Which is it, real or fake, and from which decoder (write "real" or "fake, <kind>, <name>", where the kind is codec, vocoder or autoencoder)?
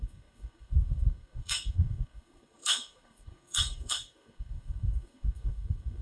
fake, codec, SNAC